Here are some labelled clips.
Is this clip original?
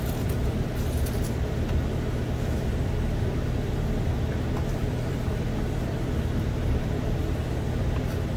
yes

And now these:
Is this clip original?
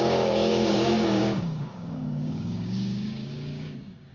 no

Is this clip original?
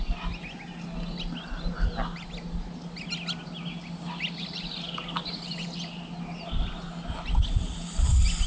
yes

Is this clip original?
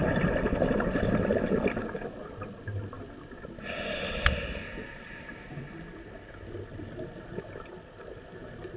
yes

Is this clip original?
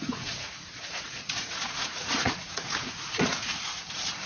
no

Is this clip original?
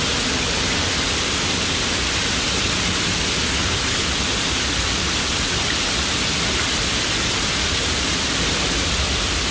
yes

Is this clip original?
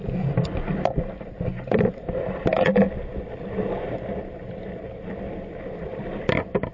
yes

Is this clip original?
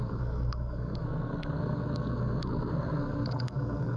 no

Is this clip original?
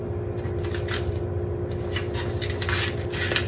yes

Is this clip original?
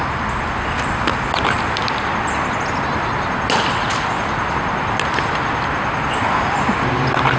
yes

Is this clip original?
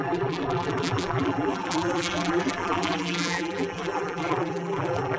no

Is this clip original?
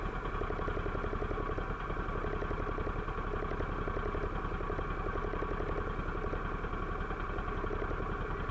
yes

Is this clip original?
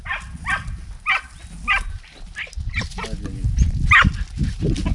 yes